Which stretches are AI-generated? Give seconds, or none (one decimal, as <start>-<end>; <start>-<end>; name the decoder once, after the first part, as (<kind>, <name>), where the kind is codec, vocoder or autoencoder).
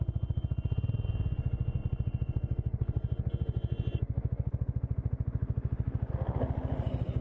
none